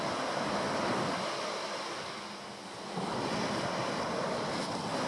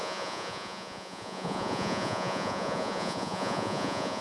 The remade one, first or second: second